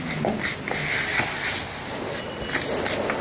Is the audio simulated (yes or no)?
no